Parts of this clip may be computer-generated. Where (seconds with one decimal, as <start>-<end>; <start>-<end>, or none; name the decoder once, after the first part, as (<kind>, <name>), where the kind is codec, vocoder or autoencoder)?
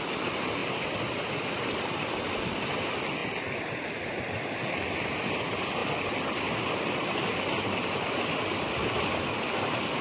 none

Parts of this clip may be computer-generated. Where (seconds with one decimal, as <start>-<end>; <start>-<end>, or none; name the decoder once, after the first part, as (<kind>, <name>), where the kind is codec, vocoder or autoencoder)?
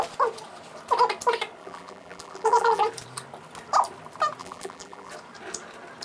1.6-2.8 (vocoder, BigVGAN v2); 4.4-5.1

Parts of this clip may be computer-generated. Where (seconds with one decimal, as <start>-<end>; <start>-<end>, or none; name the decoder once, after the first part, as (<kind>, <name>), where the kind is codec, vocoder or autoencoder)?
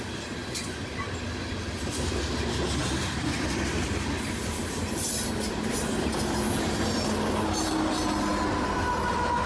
none